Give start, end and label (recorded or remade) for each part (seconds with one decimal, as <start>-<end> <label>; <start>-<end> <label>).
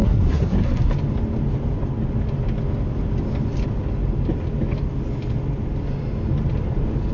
0.0-0.9 remade; 0.9-7.1 recorded